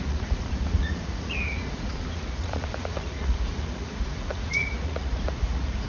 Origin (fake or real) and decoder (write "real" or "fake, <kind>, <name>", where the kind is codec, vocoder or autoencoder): fake, vocoder, Vocos